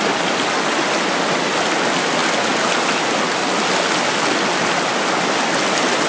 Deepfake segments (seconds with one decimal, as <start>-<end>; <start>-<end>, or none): none